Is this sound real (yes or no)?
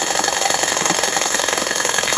no